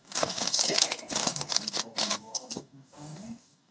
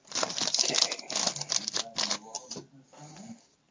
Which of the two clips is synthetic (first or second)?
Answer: first